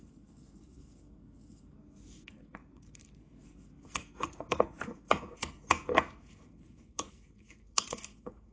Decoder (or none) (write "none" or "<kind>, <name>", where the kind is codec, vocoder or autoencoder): codec, SNAC